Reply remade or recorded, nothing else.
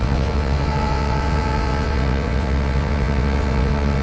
remade